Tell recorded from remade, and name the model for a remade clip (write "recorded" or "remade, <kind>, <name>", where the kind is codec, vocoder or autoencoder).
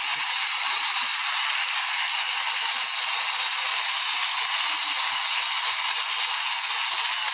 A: recorded